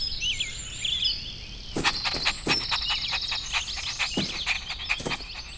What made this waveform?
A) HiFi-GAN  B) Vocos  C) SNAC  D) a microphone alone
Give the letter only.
D